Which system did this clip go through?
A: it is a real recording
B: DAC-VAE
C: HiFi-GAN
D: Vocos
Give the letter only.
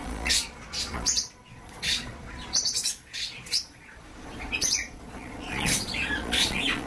D